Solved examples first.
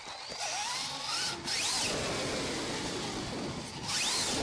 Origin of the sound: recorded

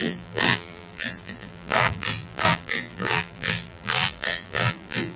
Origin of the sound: remade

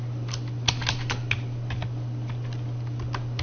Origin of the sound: recorded